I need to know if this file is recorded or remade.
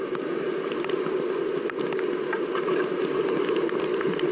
recorded